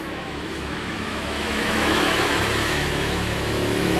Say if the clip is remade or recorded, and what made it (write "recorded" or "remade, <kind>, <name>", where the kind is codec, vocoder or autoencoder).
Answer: remade, autoencoder, DAC-VAE